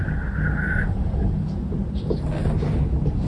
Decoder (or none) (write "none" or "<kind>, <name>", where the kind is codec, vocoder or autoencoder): none